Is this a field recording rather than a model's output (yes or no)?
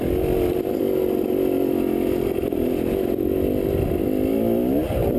yes